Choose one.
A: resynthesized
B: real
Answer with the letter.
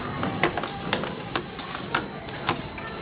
B